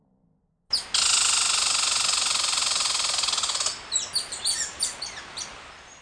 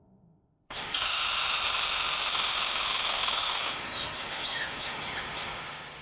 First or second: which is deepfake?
second